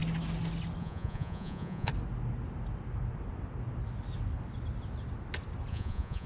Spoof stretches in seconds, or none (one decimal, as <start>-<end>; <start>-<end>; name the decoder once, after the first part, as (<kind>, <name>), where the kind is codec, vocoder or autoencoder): 0.8-1.9 (vocoder, Vocos); 5.7-6.3